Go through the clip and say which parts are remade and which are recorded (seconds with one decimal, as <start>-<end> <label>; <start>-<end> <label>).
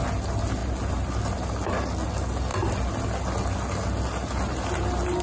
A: 0.0-5.2 recorded